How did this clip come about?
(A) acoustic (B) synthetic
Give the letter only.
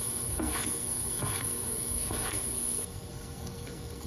B